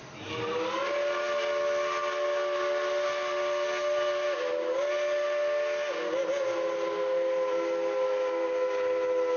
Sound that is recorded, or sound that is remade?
recorded